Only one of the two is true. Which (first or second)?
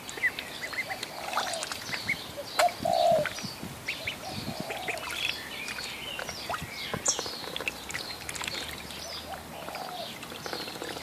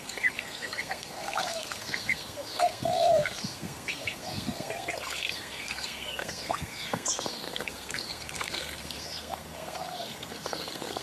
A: first